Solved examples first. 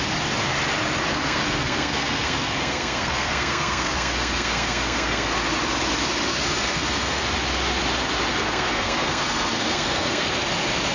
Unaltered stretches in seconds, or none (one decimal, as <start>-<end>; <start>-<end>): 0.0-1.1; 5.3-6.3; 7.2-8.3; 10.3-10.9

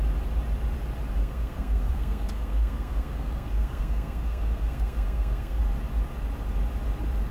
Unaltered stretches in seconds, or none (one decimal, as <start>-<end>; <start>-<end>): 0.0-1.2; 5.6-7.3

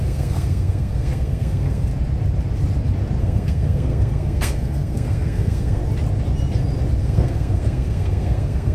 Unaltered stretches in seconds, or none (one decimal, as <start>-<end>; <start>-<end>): 1.9-3.2; 5.8-7.0